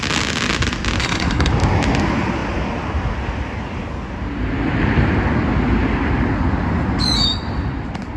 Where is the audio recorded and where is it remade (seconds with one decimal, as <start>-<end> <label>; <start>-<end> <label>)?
0.0-1.0 recorded; 1.0-1.5 remade; 1.5-8.2 recorded